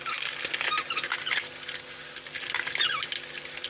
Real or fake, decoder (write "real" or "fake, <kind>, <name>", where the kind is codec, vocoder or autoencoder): real